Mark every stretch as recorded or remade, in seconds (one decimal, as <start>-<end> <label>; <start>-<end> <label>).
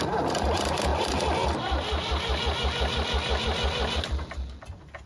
0.0-5.1 recorded